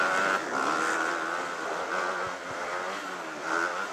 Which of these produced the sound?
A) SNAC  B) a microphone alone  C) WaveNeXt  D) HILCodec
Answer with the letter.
B